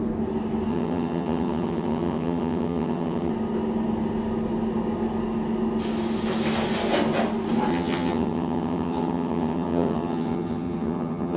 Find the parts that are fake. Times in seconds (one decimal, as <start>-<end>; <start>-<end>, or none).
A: 0.7-3.3; 7.7-11.4